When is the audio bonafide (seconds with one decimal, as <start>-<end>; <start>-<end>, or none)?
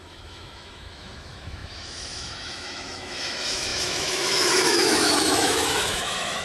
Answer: none